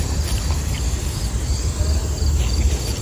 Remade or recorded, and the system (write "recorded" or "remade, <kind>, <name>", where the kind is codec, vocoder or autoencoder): recorded